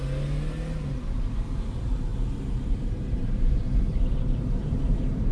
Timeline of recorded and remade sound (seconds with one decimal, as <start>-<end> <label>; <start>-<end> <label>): 0.0-2.1 recorded; 2.1-5.3 remade